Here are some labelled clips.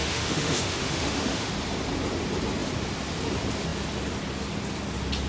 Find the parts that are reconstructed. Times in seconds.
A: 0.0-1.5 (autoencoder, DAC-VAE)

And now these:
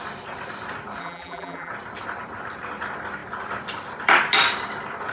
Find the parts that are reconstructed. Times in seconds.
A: 1.0-1.7 (vocoder, BigVGAN v2)

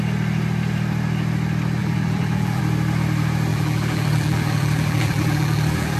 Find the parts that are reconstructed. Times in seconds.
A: 1.8-2.6 (vocoder, BigVGAN v2); 3.5-6.0